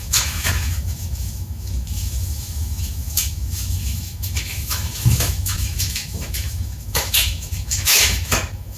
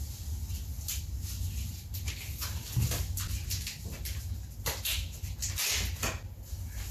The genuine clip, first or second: second